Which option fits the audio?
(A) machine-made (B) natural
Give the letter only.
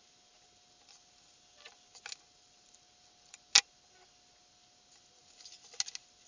B